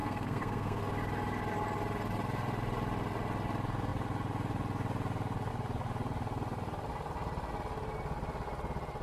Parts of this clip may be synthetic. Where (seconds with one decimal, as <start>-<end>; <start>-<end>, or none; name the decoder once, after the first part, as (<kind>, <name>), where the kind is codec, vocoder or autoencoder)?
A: 0.0-0.8 (codec, SNAC)